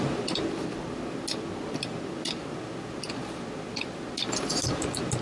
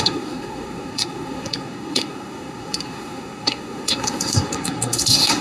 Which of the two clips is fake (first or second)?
second